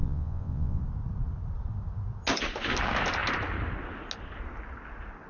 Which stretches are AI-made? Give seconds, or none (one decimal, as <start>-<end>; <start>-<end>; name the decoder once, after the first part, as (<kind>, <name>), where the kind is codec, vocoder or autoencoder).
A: 0.0-0.8 (vocoder, Vocos)